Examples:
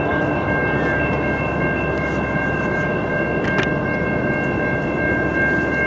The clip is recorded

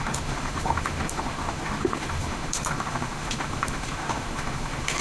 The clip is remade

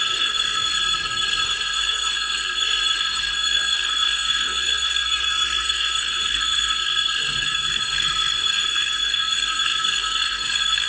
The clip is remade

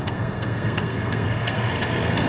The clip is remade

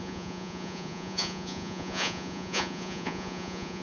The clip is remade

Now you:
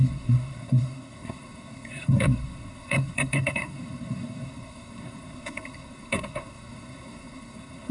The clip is remade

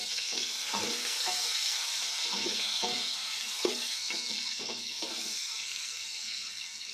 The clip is remade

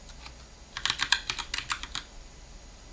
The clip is recorded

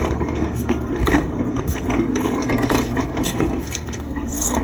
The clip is remade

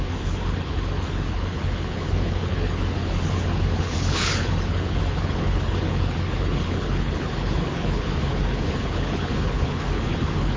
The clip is remade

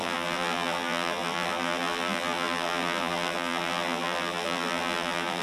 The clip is remade